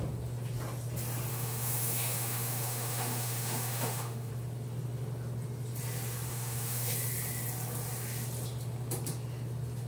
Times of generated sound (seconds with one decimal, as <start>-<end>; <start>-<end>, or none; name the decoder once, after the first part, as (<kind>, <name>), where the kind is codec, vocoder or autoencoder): 1.3-4.3 (autoencoder, DAC-VAE); 6.3-6.9